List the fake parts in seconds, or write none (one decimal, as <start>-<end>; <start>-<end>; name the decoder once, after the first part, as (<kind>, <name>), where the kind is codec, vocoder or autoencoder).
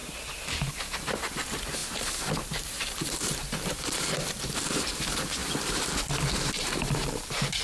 0.7-5.4 (vocoder, BigVGAN v2); 6.5-7.6